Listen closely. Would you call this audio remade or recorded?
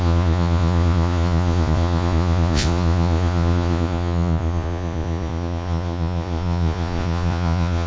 remade